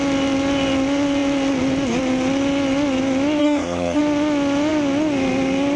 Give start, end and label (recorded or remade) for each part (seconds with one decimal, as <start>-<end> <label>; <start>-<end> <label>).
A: 0.0-3.4 recorded; 3.4-4.0 remade; 4.0-5.8 recorded

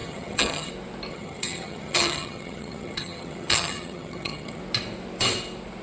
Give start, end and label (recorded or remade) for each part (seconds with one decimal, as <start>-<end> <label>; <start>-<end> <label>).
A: 0.0-0.7 remade; 0.7-1.1 recorded; 1.1-4.6 remade; 4.6-5.8 recorded

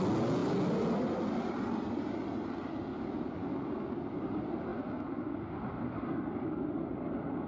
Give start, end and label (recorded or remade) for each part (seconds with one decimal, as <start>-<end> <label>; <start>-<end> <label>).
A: 0.0-7.5 recorded

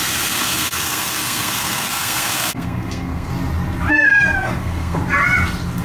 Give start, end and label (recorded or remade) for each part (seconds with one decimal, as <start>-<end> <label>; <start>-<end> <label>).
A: 0.0-3.3 remade; 3.3-3.9 recorded; 3.9-5.0 remade; 5.0-5.8 recorded

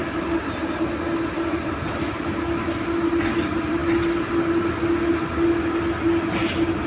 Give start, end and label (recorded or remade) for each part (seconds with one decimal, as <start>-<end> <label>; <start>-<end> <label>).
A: 0.0-6.9 recorded

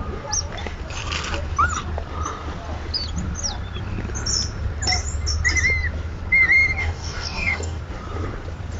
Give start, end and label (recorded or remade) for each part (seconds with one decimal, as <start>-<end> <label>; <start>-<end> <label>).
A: 0.0-6.8 recorded; 6.8-7.8 remade; 7.8-8.8 recorded

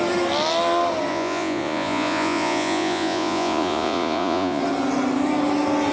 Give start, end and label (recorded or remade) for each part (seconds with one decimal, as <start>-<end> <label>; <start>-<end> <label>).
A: 0.0-1.1 recorded; 1.1-4.6 remade; 4.6-5.9 recorded